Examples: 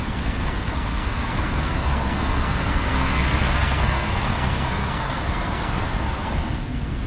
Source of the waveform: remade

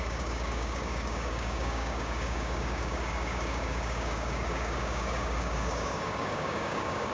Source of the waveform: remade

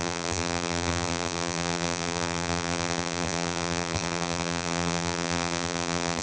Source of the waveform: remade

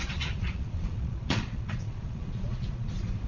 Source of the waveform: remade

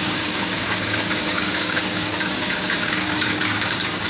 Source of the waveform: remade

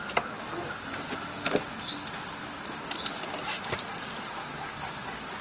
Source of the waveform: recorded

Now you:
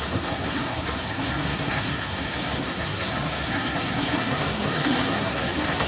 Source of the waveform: remade